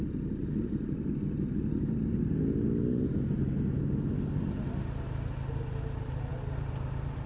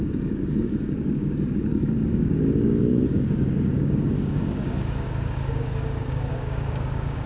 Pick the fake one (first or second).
second